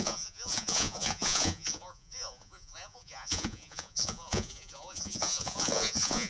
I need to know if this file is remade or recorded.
remade